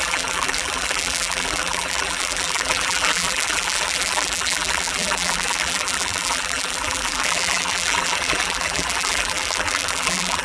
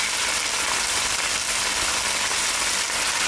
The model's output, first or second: first